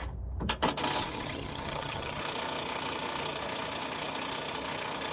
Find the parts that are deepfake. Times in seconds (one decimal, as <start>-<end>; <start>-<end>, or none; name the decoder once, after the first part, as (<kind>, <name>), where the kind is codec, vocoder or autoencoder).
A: 1.0-2.2 (vocoder, HiFi-GAN)